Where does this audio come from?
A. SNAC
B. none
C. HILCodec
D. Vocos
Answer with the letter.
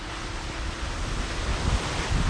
B